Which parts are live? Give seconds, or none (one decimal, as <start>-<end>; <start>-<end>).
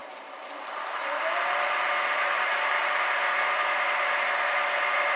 3.1-5.2